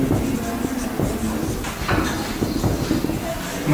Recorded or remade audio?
recorded